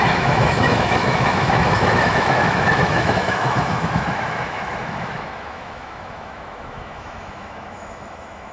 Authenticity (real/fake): fake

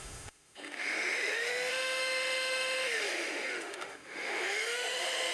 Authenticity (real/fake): fake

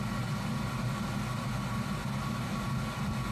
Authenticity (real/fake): real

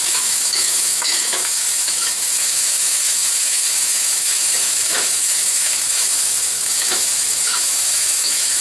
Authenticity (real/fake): fake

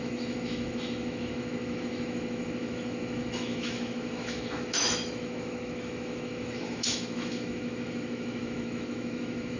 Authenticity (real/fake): fake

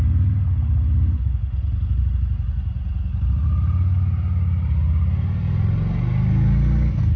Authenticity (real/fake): real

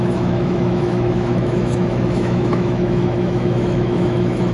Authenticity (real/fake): fake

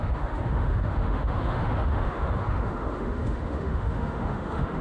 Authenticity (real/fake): fake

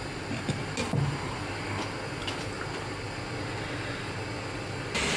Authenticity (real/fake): real